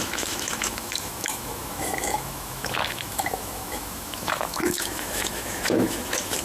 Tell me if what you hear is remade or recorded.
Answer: remade